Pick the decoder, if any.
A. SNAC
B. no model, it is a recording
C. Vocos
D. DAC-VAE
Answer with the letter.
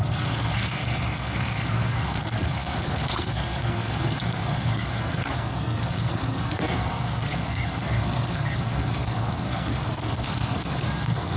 A